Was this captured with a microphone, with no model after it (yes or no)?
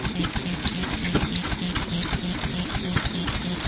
yes